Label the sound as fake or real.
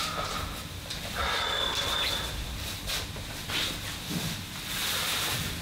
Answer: fake